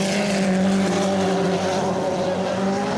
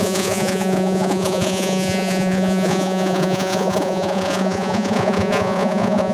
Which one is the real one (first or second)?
first